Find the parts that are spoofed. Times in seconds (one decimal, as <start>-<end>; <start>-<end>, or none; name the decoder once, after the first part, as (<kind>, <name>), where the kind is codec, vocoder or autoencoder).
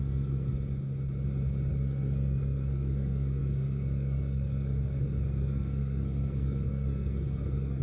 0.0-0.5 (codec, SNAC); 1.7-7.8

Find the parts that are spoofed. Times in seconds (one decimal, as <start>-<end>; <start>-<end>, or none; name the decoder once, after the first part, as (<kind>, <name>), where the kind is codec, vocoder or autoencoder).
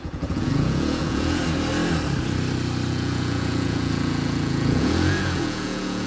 0.0-1.4 (vocoder, Vocos); 2.9-6.1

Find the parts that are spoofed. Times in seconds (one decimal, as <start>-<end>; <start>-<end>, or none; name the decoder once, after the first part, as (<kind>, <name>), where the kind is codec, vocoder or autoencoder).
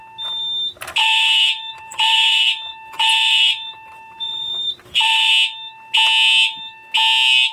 1.0-5.3 (vocoder, BigVGAN v2)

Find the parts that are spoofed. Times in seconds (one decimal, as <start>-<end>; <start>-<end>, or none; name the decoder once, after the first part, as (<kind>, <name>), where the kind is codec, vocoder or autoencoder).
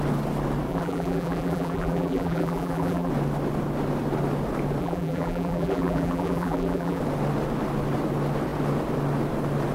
0.7-3.1 (vocoder, BigVGAN v2); 4.8-7.0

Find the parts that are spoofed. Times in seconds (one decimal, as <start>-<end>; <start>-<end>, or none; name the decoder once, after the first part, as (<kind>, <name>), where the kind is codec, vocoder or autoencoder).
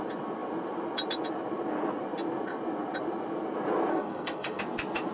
3.9-4.6 (codec, SNAC)